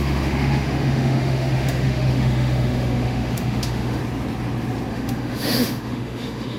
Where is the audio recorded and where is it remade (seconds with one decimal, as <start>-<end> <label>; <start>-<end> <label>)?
0.0-4.0 remade; 4.0-4.9 recorded; 4.9-6.6 remade